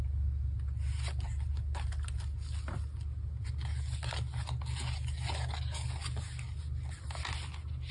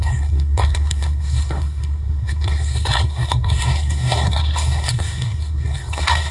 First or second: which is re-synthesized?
second